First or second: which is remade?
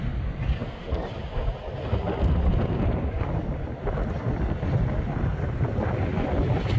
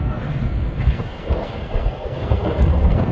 second